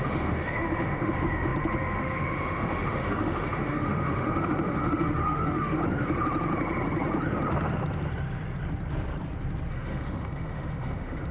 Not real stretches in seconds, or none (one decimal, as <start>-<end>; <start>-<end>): 0.0-5.8; 9.7-11.3

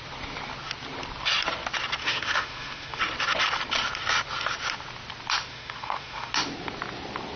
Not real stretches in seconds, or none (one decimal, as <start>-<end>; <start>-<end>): 2.0-3.0; 5.5-6.3

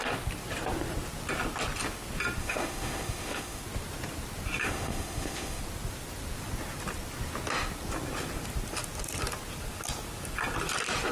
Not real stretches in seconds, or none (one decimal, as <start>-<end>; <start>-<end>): 2.4-3.6; 4.6-5.6

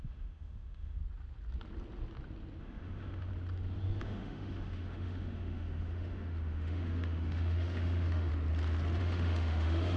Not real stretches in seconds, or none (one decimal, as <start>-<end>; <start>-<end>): 0.0-1.0; 2.6-3.3; 4.0-8.3; 9.0-10.0

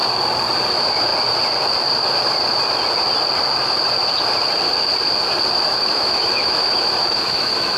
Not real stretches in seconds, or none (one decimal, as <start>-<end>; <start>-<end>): 0.7-1.1; 5.8-7.8

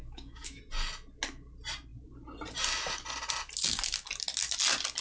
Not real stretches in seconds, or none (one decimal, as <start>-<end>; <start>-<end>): 0.0-0.6

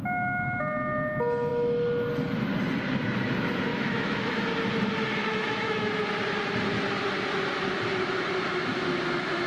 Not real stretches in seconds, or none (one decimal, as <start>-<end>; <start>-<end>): 3.7-4.4; 5.2-5.9

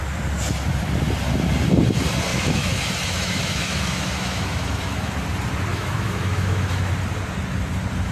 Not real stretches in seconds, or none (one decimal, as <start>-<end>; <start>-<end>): 2.3-5.1; 5.7-6.9